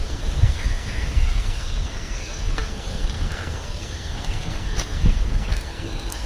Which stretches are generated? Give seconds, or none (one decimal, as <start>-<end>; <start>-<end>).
0.0-6.3